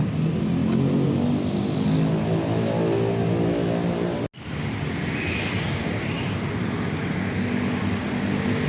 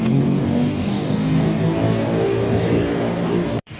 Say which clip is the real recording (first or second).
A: first